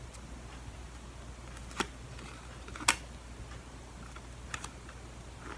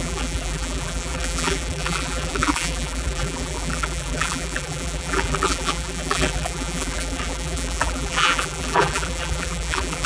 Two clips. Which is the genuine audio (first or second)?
first